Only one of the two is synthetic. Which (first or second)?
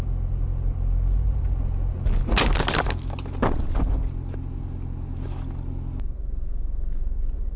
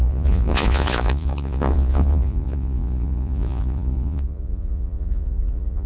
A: second